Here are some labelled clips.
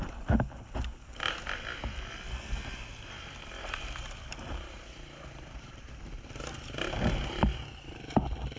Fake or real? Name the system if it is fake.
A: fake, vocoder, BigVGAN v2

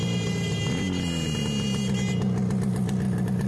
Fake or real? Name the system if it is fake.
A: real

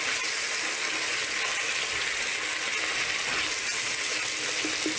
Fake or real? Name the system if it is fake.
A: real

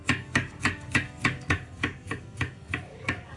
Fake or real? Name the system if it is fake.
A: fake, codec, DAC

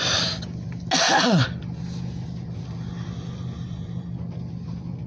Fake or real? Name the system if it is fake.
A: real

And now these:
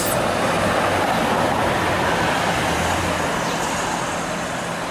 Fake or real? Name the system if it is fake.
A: real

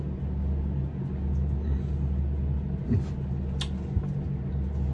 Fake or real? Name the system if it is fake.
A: real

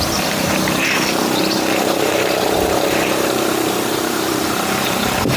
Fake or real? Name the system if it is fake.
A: fake, vocoder, BigVGAN v2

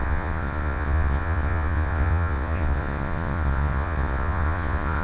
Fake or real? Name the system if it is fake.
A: fake, vocoder, Vocos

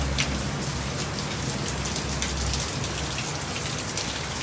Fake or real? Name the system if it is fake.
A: real